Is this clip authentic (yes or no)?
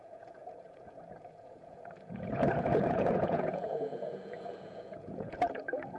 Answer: no